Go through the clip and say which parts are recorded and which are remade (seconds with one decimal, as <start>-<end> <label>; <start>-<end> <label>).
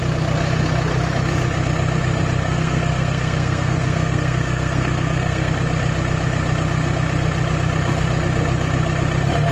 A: 0.0-2.4 recorded; 2.4-5.5 remade; 5.5-9.5 recorded